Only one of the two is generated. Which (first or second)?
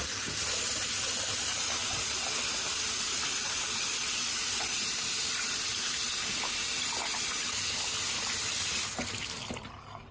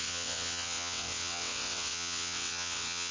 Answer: second